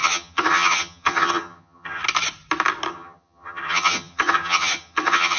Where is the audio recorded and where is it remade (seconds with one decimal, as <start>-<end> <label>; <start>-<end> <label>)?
0.0-2.0 remade; 2.0-2.9 recorded; 2.9-5.4 remade